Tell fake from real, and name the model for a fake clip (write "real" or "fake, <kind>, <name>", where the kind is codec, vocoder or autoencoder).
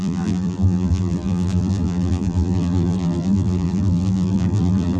fake, vocoder, BigVGAN v2